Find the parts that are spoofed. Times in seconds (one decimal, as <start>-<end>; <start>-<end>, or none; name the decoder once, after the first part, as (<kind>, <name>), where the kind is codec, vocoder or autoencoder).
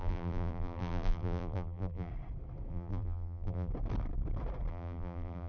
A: 0.0-2.1 (vocoder, BigVGAN v2); 2.7-3.7; 4.7-5.5